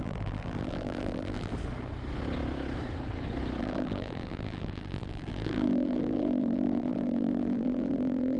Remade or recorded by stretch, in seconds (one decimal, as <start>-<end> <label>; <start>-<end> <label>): 0.0-1.5 remade; 1.5-3.6 recorded; 3.6-8.4 remade